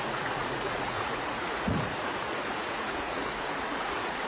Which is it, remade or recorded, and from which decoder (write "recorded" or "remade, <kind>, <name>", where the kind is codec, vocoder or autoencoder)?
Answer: remade, vocoder, Vocos